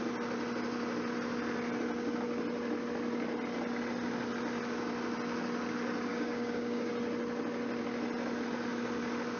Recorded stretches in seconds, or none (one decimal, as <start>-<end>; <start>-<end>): 0.0-6.1; 6.9-9.4